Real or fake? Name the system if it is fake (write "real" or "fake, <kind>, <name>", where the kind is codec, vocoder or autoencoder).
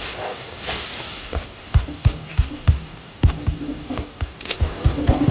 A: fake, codec, DAC